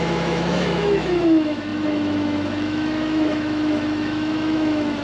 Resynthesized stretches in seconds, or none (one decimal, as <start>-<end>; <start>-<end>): 0.0-5.0